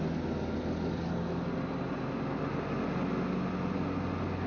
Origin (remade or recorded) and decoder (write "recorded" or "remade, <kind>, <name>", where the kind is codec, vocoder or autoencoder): recorded